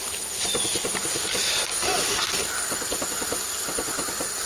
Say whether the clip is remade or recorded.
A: recorded